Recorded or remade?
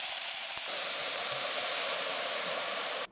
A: remade